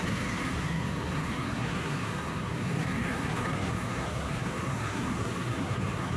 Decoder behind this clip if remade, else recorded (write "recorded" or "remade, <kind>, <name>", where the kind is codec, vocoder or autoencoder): remade, codec, SNAC